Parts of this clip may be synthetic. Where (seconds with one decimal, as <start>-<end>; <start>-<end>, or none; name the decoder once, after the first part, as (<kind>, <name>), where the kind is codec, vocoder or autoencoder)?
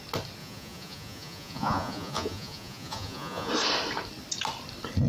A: 0.4-3.5 (vocoder, Vocos)